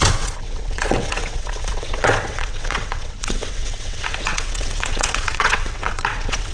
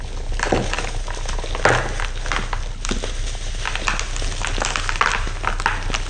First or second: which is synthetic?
first